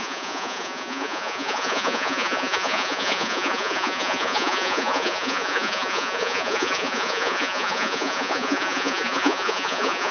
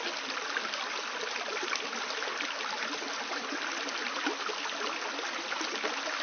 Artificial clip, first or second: first